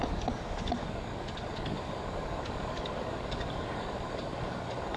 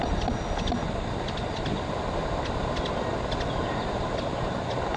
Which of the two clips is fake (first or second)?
first